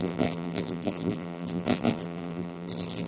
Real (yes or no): no